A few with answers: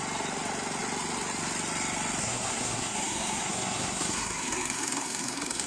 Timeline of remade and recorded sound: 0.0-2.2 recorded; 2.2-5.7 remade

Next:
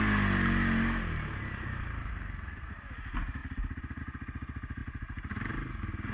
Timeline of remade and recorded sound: 0.0-2.1 recorded; 2.1-2.7 remade; 2.7-6.1 recorded

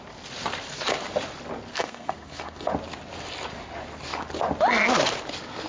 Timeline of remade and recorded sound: 0.0-1.7 recorded; 1.7-2.7 remade; 2.7-5.7 recorded

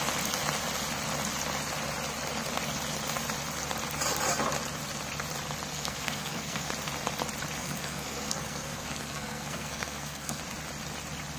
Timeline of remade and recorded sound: 0.0-5.7 recorded; 5.7-6.7 remade; 6.7-7.6 recorded; 7.6-10.4 remade; 10.4-11.4 recorded